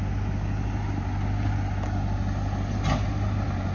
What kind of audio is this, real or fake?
real